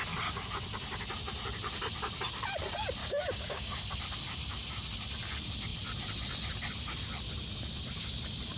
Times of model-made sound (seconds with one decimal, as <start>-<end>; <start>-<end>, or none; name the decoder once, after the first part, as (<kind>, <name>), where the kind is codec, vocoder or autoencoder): 3.0-3.7 (codec, DAC)